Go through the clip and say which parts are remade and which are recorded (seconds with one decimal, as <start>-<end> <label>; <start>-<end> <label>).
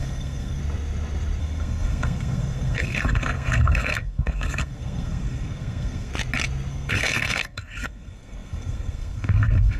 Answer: 0.0-0.6 remade; 0.6-1.4 recorded; 1.4-6.1 remade; 6.1-6.7 recorded; 6.7-9.8 remade